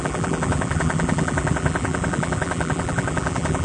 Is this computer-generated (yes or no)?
yes